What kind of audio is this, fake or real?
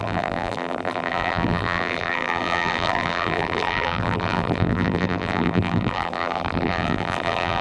fake